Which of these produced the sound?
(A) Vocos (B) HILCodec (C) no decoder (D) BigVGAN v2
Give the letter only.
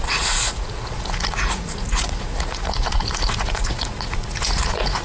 A